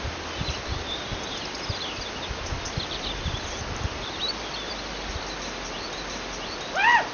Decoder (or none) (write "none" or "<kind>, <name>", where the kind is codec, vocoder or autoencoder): none